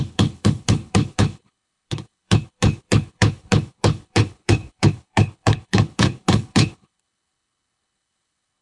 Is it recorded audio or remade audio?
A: remade